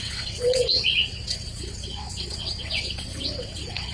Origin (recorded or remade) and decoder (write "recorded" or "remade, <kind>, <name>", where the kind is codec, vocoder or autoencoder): remade, vocoder, WaveNeXt